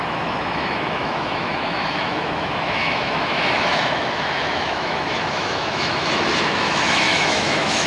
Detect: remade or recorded remade